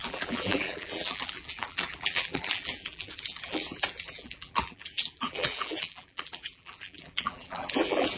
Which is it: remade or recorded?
remade